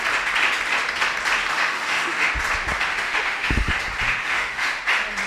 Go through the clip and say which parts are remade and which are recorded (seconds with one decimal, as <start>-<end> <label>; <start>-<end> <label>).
0.0-1.5 recorded; 1.5-2.3 remade; 2.3-2.9 recorded; 2.9-3.7 remade; 3.7-4.2 recorded; 4.2-4.8 remade; 4.8-5.3 recorded